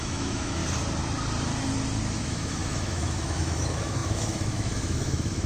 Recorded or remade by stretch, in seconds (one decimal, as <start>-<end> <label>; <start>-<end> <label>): 0.0-0.6 remade; 0.6-2.2 recorded; 2.2-5.5 remade